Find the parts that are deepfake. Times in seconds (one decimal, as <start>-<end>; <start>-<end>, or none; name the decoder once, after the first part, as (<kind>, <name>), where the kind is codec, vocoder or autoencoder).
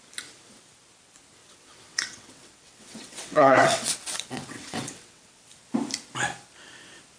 1.4-5.4 (vocoder, WaveNeXt)